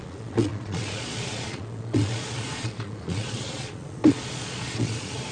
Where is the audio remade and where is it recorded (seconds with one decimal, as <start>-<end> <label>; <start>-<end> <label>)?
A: 0.0-5.3 remade